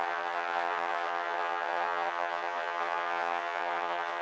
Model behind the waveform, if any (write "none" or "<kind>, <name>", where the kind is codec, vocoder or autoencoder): vocoder, HiFi-GAN